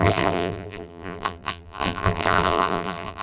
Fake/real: fake